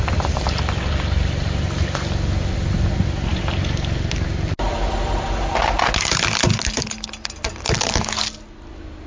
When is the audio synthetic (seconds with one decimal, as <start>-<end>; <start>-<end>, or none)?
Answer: none